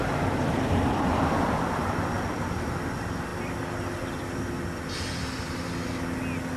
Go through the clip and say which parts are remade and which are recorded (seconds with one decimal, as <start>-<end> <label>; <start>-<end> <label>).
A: 0.0-1.8 remade; 1.8-6.6 recorded

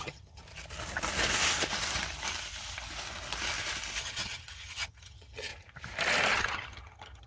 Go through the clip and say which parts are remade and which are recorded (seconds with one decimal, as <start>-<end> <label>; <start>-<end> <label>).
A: 0.0-0.4 remade; 0.4-4.0 recorded; 4.0-5.5 remade; 5.5-6.3 recorded; 6.3-7.3 remade

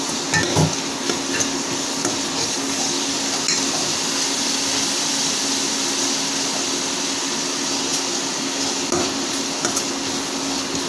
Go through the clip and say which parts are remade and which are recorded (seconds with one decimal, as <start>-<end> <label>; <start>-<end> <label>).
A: 0.0-2.4 recorded; 2.4-3.1 remade; 3.1-10.9 recorded

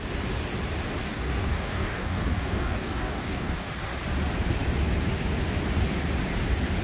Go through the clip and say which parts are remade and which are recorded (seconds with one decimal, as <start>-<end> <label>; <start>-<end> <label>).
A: 0.0-1.0 recorded; 1.0-3.7 remade; 3.7-6.8 recorded

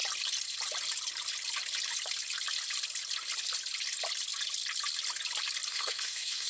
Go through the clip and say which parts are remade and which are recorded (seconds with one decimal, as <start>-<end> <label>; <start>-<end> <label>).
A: 0.0-5.7 recorded; 5.7-6.5 remade

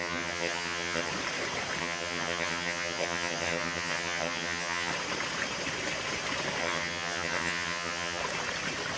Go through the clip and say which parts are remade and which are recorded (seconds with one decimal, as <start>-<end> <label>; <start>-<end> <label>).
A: 0.0-1.1 remade; 1.1-1.8 recorded; 1.8-4.9 remade; 4.9-6.6 recorded; 6.6-8.2 remade; 8.2-9.0 recorded

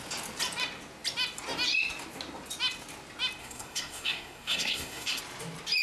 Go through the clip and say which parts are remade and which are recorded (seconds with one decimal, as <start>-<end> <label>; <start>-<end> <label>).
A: 0.0-3.4 recorded; 3.4-5.2 remade; 5.2-5.8 recorded

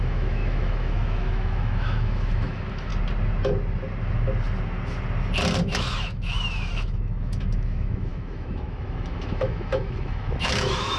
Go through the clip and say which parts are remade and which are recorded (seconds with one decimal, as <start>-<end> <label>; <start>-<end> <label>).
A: 0.0-2.9 remade; 2.9-5.6 recorded; 5.6-11.0 remade